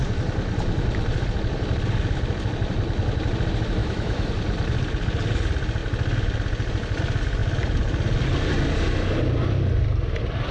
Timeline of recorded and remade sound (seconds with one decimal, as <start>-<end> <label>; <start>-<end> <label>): 0.0-3.8 recorded; 3.8-4.3 remade; 4.3-10.5 recorded